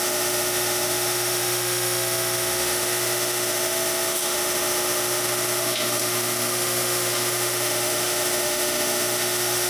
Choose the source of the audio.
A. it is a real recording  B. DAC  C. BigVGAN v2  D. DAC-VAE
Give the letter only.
D